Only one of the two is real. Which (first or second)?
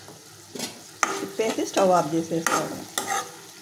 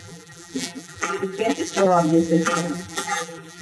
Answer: first